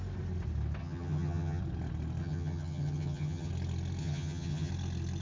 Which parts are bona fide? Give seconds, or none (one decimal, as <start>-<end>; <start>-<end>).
0.0-0.8; 1.6-2.2; 3.5-4.0; 4.7-5.2